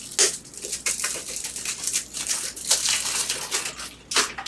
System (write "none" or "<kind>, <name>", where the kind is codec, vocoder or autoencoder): none